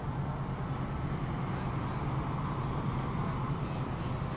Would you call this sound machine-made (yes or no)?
no